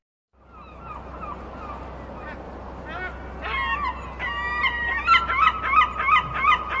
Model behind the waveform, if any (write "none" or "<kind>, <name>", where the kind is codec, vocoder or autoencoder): none